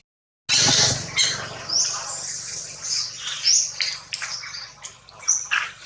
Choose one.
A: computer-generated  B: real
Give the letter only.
B